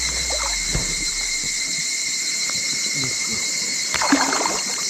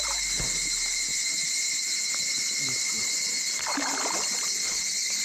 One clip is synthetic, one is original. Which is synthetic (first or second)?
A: first